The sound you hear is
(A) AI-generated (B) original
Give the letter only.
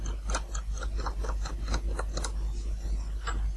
B